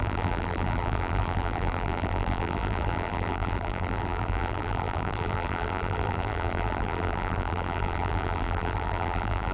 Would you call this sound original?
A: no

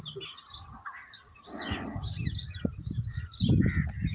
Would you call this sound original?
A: yes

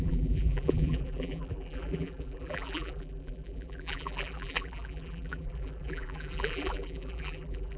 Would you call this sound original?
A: no